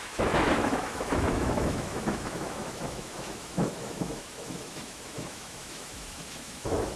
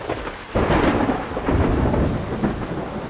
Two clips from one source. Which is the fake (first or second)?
first